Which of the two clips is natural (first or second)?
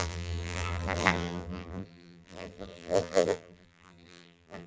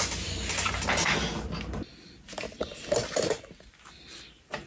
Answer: second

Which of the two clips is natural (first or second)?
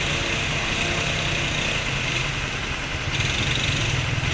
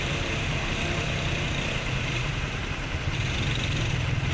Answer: first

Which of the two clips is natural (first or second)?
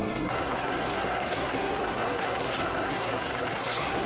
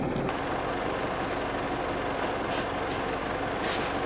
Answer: second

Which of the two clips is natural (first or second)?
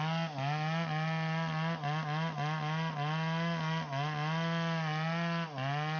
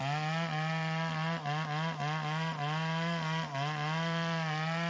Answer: first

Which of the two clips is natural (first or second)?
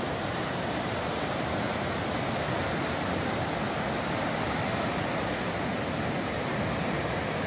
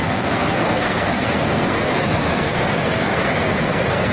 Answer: first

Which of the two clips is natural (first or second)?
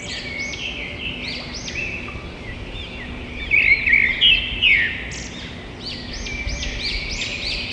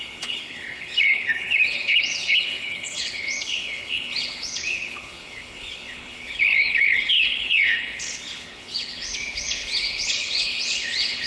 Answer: first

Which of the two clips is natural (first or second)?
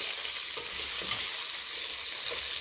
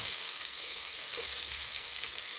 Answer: first